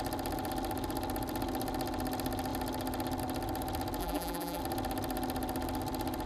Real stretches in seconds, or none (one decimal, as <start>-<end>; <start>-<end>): 0.0-4.0; 4.6-6.3